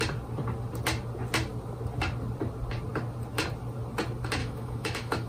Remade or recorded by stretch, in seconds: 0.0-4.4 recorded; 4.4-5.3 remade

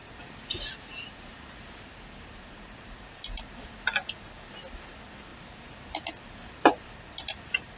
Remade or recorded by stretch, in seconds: 0.0-3.7 remade; 3.7-5.3 recorded; 5.3-7.8 remade

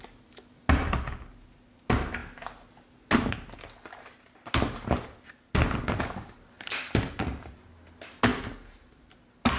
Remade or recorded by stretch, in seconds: 0.0-9.6 recorded

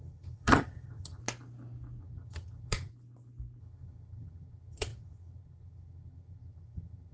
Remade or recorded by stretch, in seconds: 0.0-1.2 remade; 1.2-2.0 recorded; 2.0-2.9 remade; 2.9-3.6 recorded; 3.6-7.1 remade

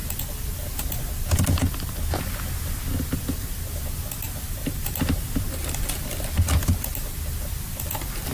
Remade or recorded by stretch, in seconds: 0.0-8.3 recorded

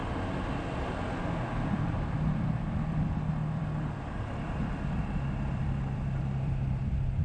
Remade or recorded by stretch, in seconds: 0.0-3.4 recorded; 3.4-7.2 remade

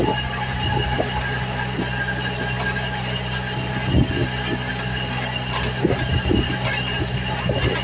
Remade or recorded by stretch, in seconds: 0.0-6.1 recorded; 6.1-6.7 remade; 6.7-7.8 recorded